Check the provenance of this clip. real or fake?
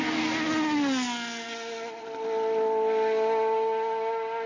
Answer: real